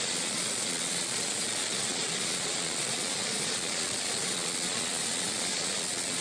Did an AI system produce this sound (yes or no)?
yes